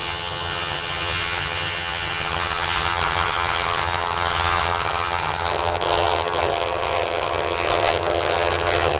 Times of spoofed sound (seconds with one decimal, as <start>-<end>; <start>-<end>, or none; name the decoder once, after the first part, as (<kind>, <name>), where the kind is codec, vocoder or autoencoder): 0.0-9.0 (vocoder, HiFi-GAN)